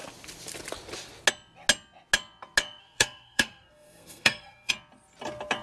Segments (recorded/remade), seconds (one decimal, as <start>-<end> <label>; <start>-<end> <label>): 0.0-2.8 recorded; 2.8-4.7 remade; 4.7-5.6 recorded